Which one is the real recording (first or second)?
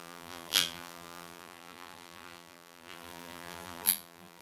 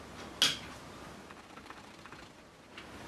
second